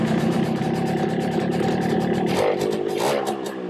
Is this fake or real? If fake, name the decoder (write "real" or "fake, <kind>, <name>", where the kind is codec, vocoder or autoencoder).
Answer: fake, vocoder, BigVGAN v2